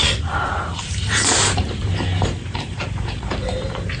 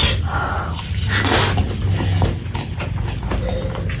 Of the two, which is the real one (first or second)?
second